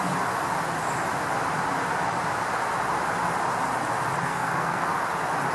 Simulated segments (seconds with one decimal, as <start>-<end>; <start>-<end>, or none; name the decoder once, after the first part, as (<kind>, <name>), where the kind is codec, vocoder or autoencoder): 4.2-4.9 (codec, SNAC)